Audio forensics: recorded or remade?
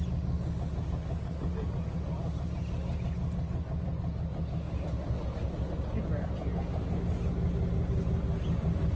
recorded